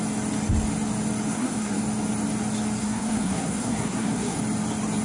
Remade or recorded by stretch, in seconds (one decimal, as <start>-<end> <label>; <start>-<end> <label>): 0.0-1.3 recorded; 1.3-1.8 remade; 1.8-2.8 recorded; 2.8-4.4 remade; 4.4-5.0 recorded